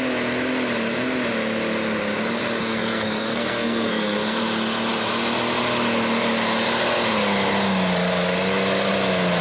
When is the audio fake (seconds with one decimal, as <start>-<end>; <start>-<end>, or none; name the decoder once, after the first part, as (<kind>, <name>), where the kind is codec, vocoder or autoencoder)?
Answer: 2.6-4.4 (codec, SNAC)